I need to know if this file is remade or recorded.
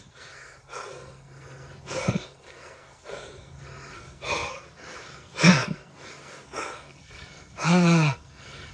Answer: remade